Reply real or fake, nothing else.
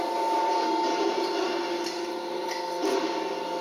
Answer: real